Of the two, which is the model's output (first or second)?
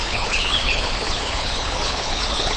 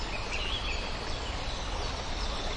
first